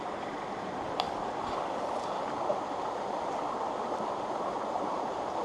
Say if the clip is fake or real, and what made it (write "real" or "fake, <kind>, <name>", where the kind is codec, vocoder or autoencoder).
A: real